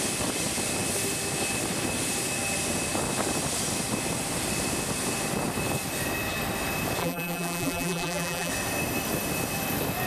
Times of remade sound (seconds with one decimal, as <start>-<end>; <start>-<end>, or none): 7.0-8.5